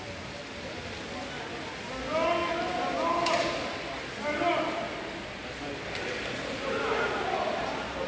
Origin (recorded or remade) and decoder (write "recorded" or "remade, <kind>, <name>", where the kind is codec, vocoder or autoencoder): recorded